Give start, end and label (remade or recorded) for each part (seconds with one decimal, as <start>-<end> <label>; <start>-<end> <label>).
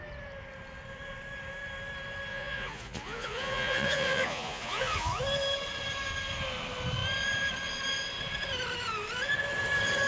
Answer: 0.0-2.3 recorded; 2.3-5.2 remade; 5.2-10.1 recorded